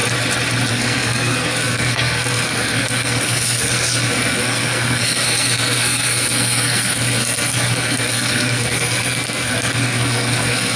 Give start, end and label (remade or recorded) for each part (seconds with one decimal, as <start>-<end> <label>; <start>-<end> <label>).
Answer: 0.0-0.7 recorded; 0.7-10.8 remade